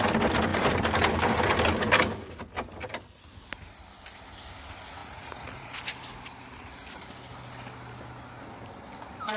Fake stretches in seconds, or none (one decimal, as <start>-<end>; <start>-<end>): 5.0-5.8